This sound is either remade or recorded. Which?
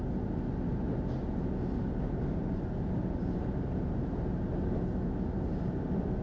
recorded